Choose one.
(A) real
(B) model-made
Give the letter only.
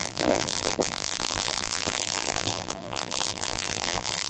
B